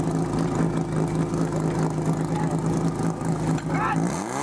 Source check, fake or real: real